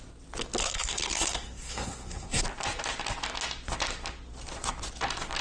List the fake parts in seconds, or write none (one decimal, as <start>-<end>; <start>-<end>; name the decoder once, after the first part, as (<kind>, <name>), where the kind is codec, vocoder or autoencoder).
0.6-2.4 (codec, SNAC)